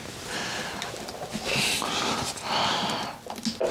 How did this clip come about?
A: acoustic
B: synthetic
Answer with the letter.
A